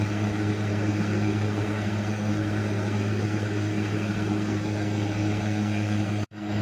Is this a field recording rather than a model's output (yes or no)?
no